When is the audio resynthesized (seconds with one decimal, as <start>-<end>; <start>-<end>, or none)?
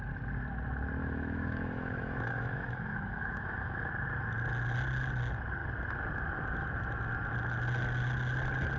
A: 1.0-3.9